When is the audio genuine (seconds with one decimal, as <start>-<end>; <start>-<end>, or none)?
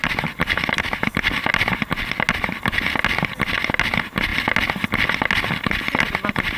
1.5-6.6